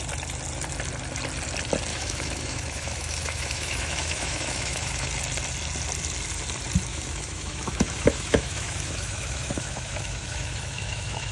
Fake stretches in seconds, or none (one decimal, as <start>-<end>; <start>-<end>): 1.9-5.1; 6.9-11.3